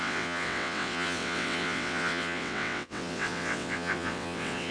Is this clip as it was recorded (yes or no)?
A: no